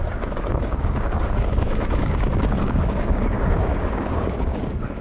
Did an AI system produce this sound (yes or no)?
yes